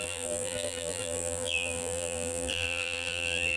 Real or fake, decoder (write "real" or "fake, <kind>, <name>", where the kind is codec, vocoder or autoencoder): fake, vocoder, BigVGAN v2